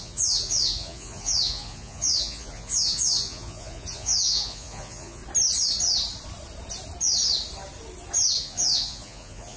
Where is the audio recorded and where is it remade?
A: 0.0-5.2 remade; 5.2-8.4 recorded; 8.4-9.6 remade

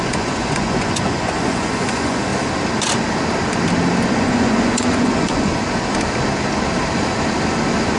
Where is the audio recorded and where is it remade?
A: 0.0-2.3 remade; 2.3-4.2 recorded; 4.2-5.5 remade; 5.5-8.0 recorded

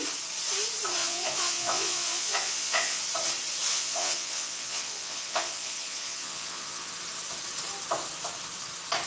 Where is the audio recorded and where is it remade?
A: 0.0-1.0 recorded; 1.0-3.0 remade; 3.0-3.7 recorded; 3.7-6.9 remade; 6.9-9.1 recorded

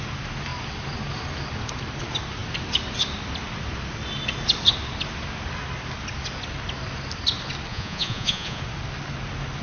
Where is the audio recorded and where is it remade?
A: 0.0-7.7 recorded; 7.7-8.6 remade; 8.6-9.6 recorded

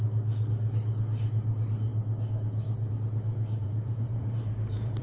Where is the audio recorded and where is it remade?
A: 0.0-3.6 recorded; 3.6-5.0 remade

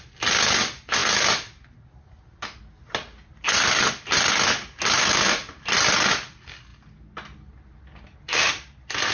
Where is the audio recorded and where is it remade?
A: 0.0-9.1 recorded

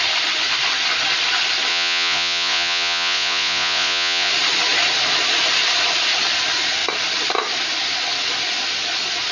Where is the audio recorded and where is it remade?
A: 0.0-1.7 recorded; 1.7-4.3 remade; 4.3-9.3 recorded

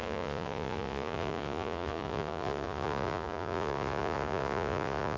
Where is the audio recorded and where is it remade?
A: 0.0-5.2 remade